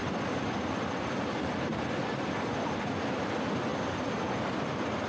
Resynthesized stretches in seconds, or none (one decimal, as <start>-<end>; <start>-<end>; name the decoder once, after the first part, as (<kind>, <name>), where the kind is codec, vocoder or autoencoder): none

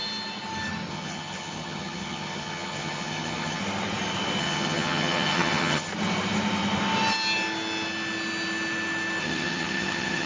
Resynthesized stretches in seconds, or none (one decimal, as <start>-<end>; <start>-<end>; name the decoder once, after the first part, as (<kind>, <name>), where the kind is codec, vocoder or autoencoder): 0.9-3.6 (vocoder, HiFi-GAN); 4.4-5.9; 9.2-10.3